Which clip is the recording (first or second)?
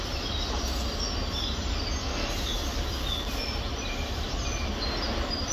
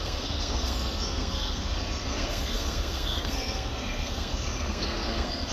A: first